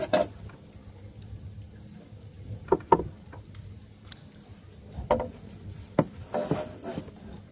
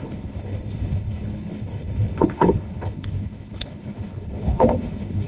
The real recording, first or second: first